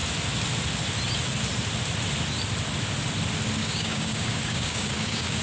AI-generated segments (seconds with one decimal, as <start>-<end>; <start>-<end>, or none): 3.6-5.4